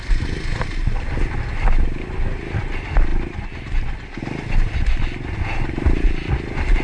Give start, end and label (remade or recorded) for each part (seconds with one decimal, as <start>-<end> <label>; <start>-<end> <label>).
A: 0.0-6.8 recorded